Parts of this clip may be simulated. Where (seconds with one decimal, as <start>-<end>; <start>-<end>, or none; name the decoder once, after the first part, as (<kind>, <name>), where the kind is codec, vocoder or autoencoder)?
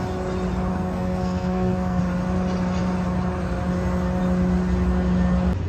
0.7-2.0 (codec, SNAC)